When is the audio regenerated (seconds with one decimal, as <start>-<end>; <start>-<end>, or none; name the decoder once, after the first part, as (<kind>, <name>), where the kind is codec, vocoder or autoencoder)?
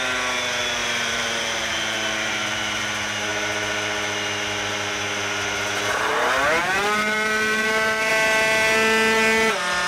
0.8-2.8 (vocoder, BigVGAN v2); 6.6-8.1